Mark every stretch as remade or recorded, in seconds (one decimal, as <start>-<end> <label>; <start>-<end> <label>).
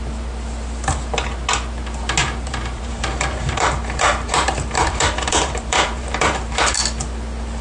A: 0.0-2.2 recorded; 2.2-6.4 remade; 6.4-7.6 recorded